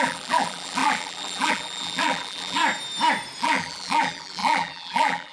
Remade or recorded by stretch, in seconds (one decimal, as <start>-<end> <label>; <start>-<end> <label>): 0.0-2.6 remade; 2.6-3.4 recorded; 3.4-5.3 remade